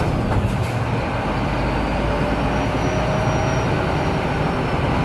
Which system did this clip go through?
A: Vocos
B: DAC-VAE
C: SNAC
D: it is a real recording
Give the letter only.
D